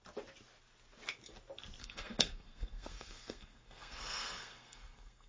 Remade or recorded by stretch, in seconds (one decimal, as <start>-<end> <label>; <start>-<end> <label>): 0.0-1.8 recorded; 1.8-5.3 remade

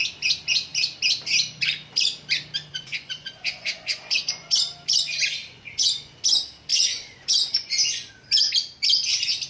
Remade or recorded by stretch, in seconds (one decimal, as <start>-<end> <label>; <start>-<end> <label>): 0.0-2.7 recorded; 2.7-4.6 remade; 4.6-5.4 recorded; 5.4-6.2 remade; 6.2-6.7 recorded; 6.7-8.1 remade; 8.1-9.5 recorded

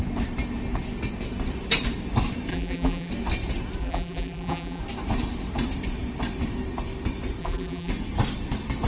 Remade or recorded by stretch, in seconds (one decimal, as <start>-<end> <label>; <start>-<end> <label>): 0.0-2.5 recorded; 2.5-3.1 remade; 3.1-3.8 recorded; 3.8-4.8 remade; 4.8-7.4 recorded; 7.4-7.9 remade; 7.9-8.9 recorded

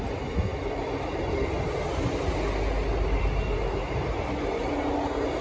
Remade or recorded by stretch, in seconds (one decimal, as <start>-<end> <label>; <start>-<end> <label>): 0.0-5.4 recorded

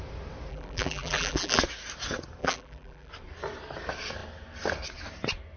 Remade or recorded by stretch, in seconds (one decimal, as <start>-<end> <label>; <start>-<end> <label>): 0.0-0.5 recorded; 0.5-1.6 remade; 1.6-2.4 recorded; 2.4-3.1 remade; 3.1-5.6 recorded

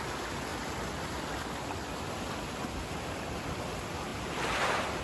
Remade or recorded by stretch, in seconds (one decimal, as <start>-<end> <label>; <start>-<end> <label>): 0.0-5.0 recorded

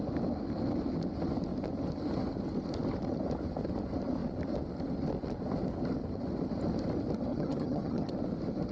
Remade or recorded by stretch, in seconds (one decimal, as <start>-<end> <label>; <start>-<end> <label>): 0.0-7.3 recorded; 7.3-8.1 remade; 8.1-8.7 recorded

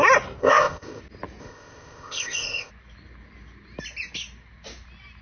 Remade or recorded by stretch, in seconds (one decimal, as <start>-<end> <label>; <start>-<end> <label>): 0.0-0.4 recorded; 0.4-1.0 remade; 1.0-1.4 recorded; 1.4-2.7 remade; 2.7-5.2 recorded